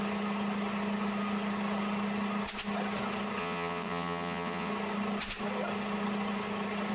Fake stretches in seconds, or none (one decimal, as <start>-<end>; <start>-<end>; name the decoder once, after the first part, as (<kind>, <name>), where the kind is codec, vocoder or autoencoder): 3.4-4.7 (vocoder, WaveNeXt)